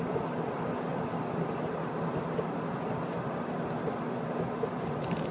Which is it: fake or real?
real